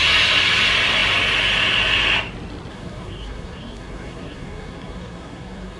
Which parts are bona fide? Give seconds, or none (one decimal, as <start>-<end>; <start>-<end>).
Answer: 0.0-2.7